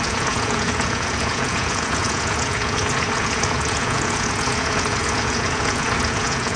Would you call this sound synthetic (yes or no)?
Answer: yes